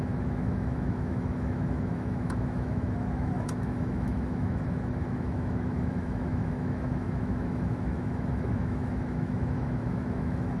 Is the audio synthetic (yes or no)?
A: yes